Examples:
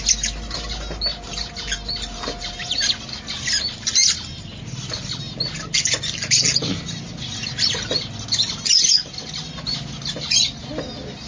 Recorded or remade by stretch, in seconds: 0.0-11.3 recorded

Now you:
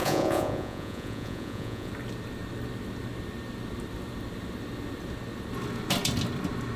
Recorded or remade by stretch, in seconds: 0.0-1.9 remade; 1.9-6.8 recorded

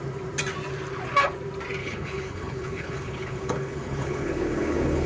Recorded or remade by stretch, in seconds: 0.0-1.8 recorded; 1.8-5.1 remade

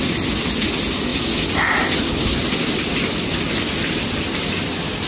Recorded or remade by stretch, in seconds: 0.0-5.1 recorded

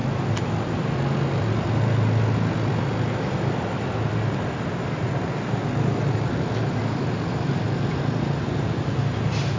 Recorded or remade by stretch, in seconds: 0.0-9.6 recorded

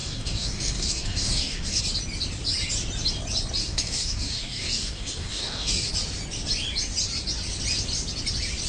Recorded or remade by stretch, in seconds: 0.0-1.8 remade; 1.8-3.6 recorded; 3.6-5.9 remade; 5.9-8.7 recorded